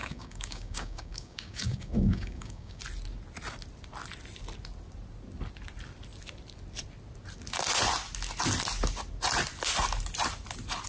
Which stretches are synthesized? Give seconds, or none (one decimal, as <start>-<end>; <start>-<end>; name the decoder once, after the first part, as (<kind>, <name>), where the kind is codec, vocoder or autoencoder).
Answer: 0.0-2.8 (codec, DAC)